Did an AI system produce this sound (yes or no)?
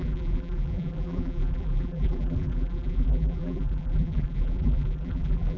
yes